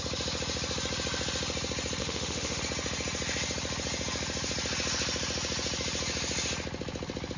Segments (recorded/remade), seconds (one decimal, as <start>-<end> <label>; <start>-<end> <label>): 0.0-2.0 recorded; 2.0-2.6 remade; 2.6-7.4 recorded